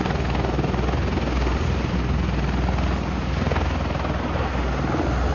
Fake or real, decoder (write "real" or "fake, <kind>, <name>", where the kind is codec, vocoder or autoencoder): real